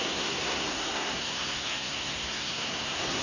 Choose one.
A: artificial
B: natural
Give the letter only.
A